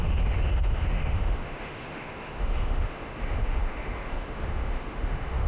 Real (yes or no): no